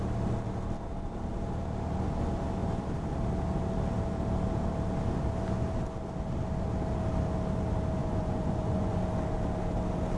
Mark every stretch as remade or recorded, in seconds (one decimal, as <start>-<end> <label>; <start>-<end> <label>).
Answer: 0.0-8.0 recorded; 8.0-9.0 remade; 9.0-10.2 recorded